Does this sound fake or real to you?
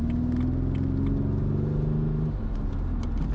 real